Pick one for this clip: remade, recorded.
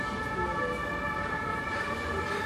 recorded